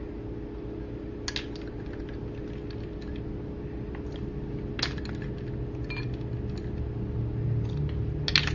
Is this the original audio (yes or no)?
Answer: yes